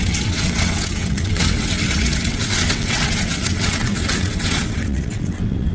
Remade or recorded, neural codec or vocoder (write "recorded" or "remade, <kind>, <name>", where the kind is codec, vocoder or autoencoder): remade, vocoder, WaveNeXt